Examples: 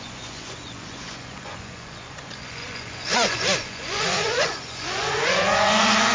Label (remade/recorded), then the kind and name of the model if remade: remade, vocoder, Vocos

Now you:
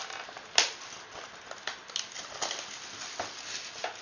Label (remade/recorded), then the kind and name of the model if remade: recorded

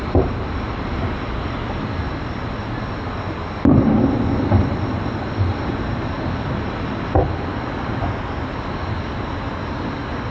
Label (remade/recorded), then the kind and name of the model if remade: recorded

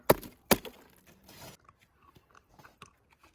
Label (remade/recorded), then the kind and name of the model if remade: recorded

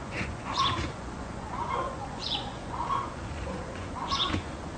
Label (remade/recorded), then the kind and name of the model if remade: remade, vocoder, Vocos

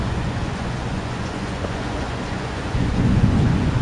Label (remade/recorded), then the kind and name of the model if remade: remade, vocoder, Vocos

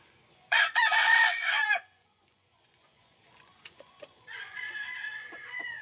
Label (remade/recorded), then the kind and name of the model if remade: remade, vocoder, Vocos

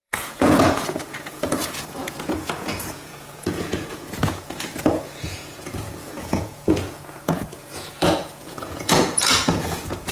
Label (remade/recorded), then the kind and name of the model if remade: remade, vocoder, Vocos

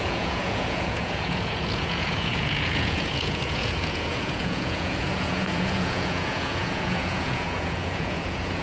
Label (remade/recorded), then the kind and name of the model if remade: remade, vocoder, Vocos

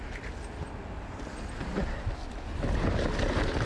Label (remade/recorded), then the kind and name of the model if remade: recorded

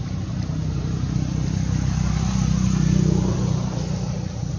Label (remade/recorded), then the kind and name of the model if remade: recorded